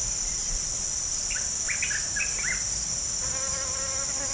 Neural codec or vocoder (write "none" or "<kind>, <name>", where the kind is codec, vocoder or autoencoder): none